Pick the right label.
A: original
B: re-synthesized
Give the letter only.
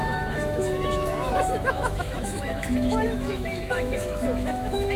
B